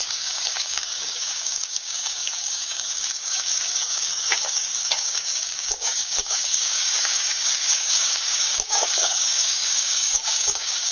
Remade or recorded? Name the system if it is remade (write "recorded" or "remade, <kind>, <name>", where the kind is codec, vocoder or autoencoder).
remade, codec, DAC